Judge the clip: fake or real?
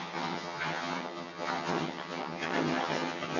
fake